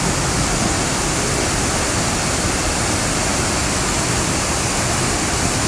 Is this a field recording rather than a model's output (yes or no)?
yes